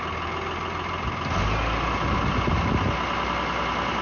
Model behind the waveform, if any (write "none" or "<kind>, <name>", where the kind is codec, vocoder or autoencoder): none